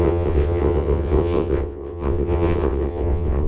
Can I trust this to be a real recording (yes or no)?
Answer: no